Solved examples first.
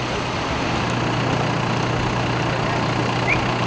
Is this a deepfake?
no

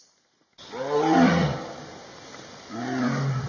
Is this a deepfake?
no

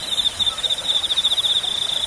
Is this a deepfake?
no